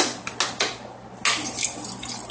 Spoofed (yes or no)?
no